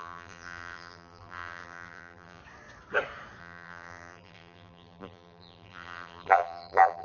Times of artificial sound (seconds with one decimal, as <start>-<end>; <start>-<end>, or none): 0.0-2.4; 3.4-7.0